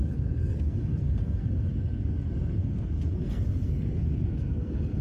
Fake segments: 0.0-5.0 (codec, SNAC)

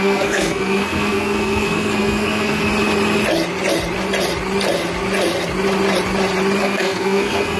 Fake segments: 0.0-2.7 (codec, SNAC); 6.6-7.6

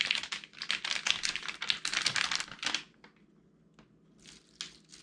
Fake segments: none

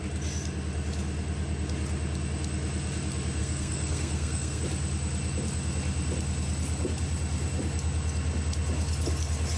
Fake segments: 3.4-4.6 (codec, SNAC)